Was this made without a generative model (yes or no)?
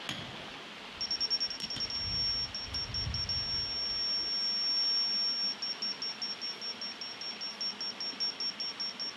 yes